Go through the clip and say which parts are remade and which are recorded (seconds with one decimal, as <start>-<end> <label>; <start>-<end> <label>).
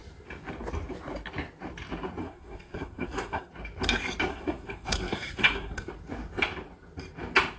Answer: 0.0-2.2 recorded; 2.2-3.5 remade; 3.5-4.3 recorded; 4.3-5.9 remade; 5.9-7.6 recorded